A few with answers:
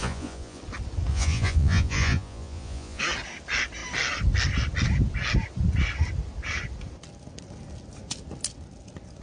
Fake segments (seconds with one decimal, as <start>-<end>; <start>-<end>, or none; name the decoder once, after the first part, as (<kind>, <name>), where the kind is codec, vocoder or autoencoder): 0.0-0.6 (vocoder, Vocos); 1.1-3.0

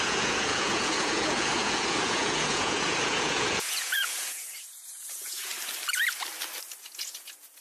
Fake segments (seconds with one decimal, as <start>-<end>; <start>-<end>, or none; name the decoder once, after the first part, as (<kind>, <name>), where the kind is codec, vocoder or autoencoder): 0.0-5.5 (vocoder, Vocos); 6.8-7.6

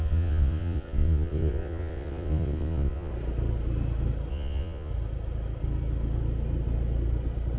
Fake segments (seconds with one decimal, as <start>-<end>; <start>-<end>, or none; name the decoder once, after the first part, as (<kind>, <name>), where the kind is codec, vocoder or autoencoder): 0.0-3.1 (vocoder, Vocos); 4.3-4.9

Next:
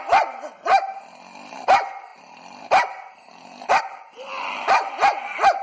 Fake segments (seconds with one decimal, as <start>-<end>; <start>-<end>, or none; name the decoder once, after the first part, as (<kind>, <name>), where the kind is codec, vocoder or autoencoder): none